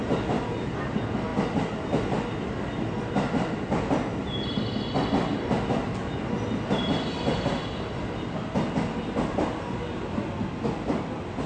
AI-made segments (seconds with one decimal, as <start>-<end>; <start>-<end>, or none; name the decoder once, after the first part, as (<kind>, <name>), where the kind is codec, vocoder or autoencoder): none